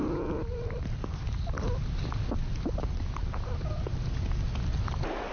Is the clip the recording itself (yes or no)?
yes